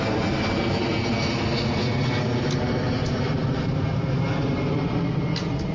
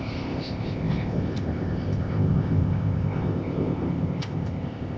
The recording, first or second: first